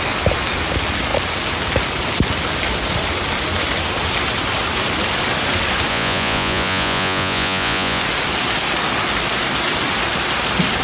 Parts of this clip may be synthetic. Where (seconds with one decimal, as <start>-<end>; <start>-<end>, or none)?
5.9-8.0

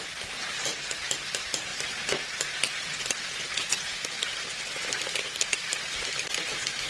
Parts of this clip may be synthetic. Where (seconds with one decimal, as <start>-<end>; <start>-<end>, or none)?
1.7-4.5

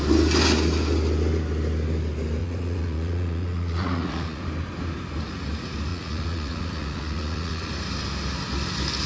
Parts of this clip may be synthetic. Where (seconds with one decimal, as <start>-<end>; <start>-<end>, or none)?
2.4-4.4; 5.9-7.7

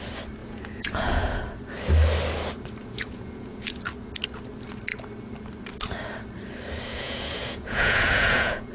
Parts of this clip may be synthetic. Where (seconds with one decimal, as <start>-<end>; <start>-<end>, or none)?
0.4-1.4; 2.8-3.8; 6.9-8.7